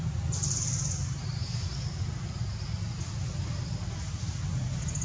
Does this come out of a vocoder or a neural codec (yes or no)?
no